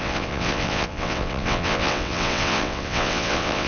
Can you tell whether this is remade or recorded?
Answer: remade